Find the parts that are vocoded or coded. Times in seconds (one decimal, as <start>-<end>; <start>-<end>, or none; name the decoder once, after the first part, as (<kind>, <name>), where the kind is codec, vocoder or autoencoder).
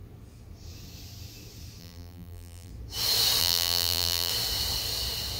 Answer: 1.8-2.7 (vocoder, BigVGAN v2); 3.4-4.3